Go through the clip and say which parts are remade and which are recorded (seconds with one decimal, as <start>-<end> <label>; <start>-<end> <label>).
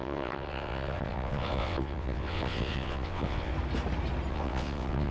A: 0.0-3.5 remade; 3.5-4.3 recorded; 4.3-5.1 remade